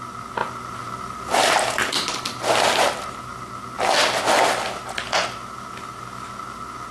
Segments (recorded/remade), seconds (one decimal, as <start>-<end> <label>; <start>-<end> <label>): 0.0-6.9 recorded